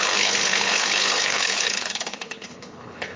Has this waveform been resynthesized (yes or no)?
yes